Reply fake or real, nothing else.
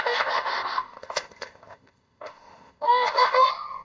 fake